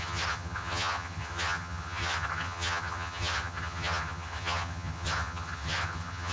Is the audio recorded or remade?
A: remade